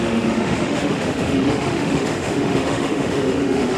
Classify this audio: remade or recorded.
remade